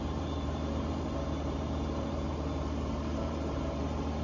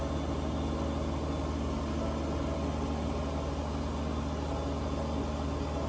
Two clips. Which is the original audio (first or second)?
second